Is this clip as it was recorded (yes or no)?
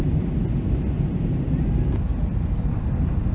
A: yes